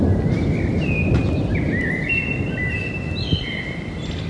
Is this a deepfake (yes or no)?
no